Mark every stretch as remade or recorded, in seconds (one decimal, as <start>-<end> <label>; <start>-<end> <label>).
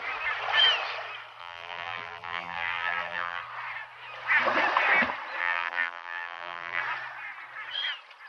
0.0-1.4 recorded; 1.4-3.4 remade; 3.4-5.4 recorded; 5.4-6.8 remade; 6.8-8.3 recorded